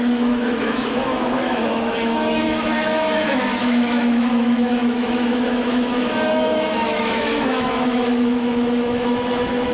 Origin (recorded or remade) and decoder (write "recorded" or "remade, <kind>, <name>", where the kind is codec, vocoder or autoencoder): remade, autoencoder, DAC-VAE